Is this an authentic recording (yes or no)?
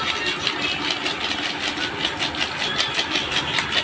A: yes